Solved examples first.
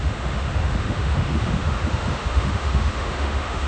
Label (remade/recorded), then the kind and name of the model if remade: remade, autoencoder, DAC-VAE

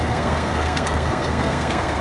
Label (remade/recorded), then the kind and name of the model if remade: remade, codec, SNAC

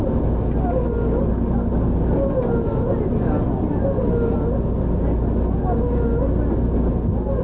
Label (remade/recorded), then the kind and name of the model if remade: recorded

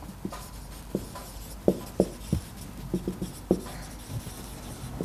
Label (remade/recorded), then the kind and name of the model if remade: recorded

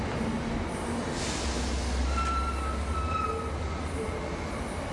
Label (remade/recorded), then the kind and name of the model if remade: recorded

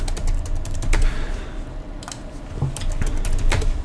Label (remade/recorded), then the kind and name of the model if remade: recorded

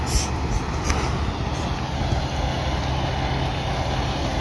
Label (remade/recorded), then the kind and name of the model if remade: recorded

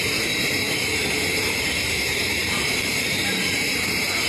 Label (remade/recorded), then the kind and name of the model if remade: remade, vocoder, BigVGAN v2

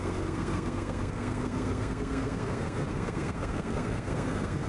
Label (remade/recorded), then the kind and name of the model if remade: remade, codec, SNAC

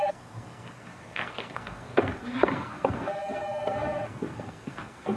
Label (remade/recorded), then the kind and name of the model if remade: remade, codec, SNAC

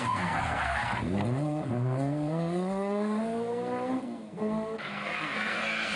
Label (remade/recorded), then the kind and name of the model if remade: remade, codec, SNAC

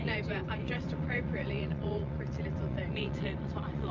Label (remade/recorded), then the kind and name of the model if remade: remade, vocoder, Vocos